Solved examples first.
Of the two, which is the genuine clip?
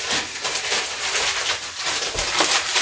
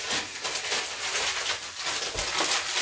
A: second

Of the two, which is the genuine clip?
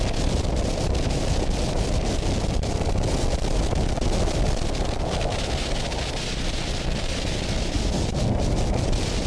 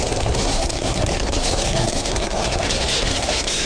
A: first